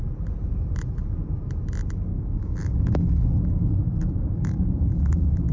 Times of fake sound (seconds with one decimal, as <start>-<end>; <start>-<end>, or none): 2.1-5.5